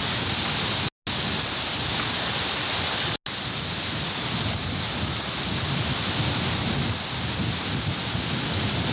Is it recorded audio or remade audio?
recorded